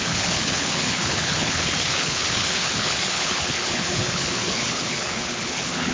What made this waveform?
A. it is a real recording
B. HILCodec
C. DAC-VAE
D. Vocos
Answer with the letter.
B